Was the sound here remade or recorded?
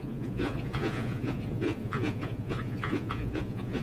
remade